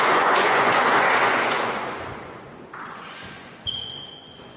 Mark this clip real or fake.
fake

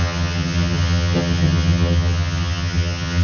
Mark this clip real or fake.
fake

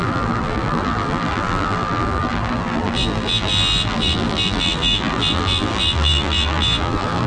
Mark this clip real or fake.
fake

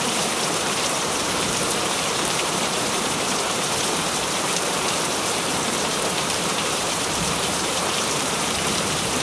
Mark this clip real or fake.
fake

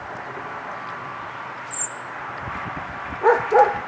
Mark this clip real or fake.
real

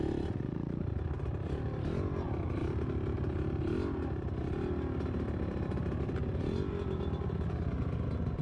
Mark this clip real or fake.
real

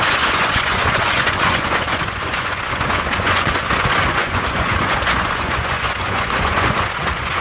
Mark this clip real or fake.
fake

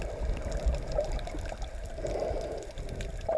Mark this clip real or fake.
real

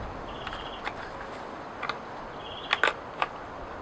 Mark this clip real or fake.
real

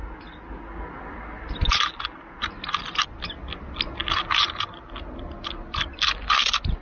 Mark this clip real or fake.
real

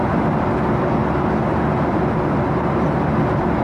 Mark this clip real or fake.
real